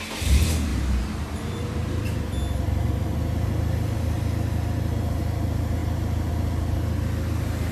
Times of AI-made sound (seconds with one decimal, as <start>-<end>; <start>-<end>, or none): 0.7-2.0